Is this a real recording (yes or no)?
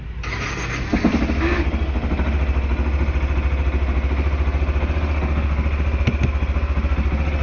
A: yes